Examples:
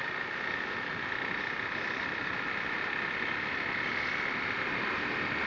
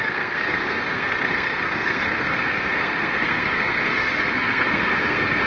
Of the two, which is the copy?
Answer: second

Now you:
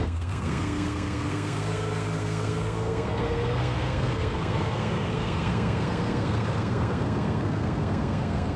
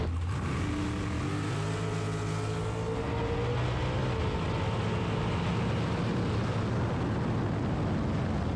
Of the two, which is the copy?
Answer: first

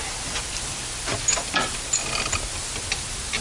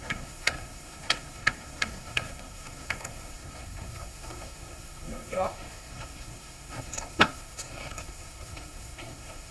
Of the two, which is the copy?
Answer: second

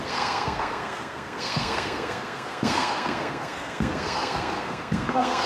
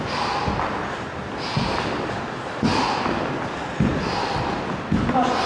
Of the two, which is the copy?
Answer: first